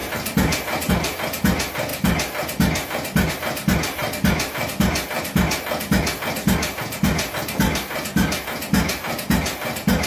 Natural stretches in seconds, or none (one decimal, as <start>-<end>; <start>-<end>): 0.0-10.1